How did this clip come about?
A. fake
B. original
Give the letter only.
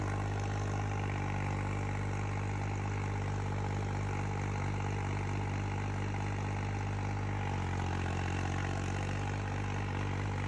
B